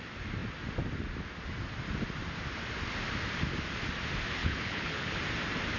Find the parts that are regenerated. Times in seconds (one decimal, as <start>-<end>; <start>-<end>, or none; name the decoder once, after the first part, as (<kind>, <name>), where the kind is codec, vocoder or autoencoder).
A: 4.4-5.1 (codec, HILCodec)